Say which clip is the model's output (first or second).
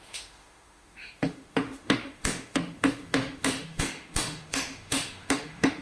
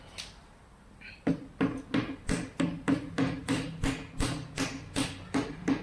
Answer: first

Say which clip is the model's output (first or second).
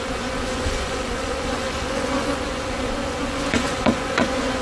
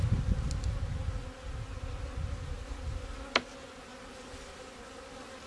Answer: first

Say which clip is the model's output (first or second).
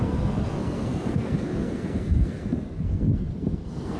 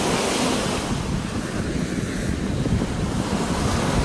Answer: first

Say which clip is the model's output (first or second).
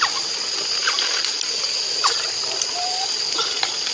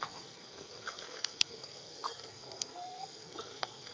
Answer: second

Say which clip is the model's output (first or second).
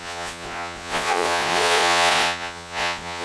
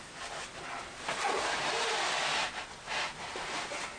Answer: first